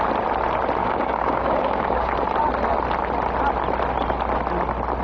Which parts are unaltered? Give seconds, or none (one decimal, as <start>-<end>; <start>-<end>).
0.0-0.8; 2.1-5.0